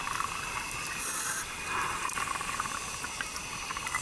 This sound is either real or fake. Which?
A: real